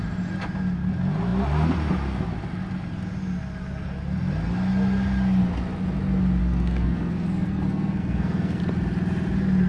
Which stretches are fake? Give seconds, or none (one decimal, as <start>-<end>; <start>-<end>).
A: 6.4-8.6